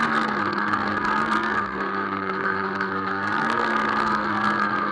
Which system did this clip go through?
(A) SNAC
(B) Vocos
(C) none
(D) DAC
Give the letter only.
A